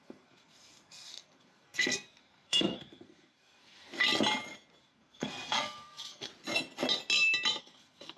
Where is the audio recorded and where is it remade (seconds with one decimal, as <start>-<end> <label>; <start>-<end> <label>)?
0.0-3.9 remade; 3.9-4.8 recorded; 4.8-6.3 remade; 6.3-7.6 recorded; 7.6-8.2 remade